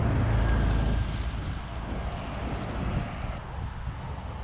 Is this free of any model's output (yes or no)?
yes